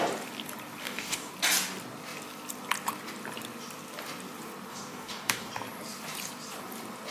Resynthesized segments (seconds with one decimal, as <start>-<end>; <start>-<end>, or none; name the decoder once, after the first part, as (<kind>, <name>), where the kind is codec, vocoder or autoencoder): 0.8-1.3 (codec, DAC); 4.7-5.5